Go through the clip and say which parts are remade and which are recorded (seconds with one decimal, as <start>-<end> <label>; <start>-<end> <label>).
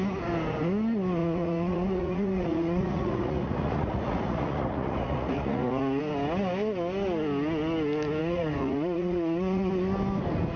0.0-1.2 recorded; 1.2-6.0 remade; 6.0-8.2 recorded; 8.2-9.7 remade; 9.7-10.6 recorded